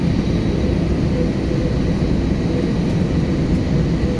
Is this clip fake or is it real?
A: real